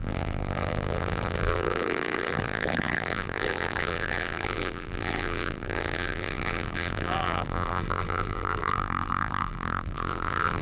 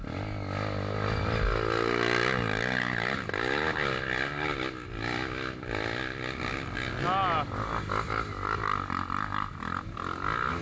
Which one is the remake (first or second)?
first